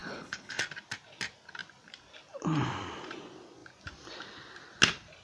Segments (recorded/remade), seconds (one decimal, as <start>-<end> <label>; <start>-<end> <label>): 0.0-0.6 remade; 0.6-5.2 recorded